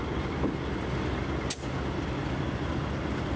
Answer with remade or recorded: recorded